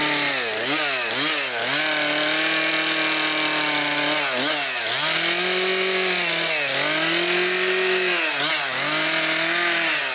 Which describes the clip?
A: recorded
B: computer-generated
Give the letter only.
A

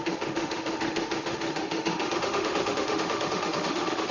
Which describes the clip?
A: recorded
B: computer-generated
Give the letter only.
B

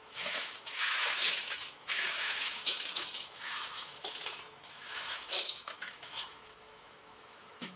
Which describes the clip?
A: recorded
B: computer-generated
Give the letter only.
B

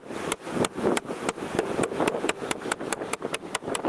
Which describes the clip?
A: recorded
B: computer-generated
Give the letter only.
A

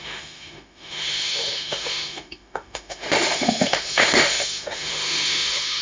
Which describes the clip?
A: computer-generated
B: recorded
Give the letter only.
A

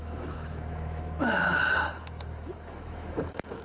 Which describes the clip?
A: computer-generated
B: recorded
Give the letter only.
A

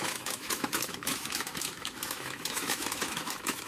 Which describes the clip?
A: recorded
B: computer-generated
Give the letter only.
B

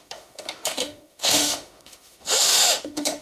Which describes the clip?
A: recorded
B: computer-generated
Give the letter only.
B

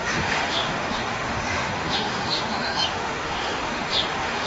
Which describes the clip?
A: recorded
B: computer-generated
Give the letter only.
B